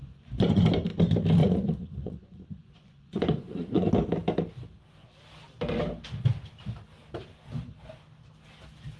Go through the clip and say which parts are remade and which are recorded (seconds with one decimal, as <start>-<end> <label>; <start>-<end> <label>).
0.0-0.6 remade; 0.6-1.4 recorded; 1.4-3.9 remade; 3.9-9.0 recorded